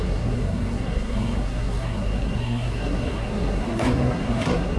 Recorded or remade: remade